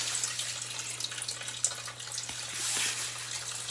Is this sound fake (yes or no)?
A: no